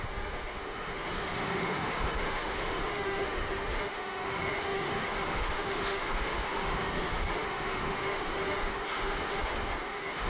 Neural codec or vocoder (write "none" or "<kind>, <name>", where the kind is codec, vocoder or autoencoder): autoencoder, DAC-VAE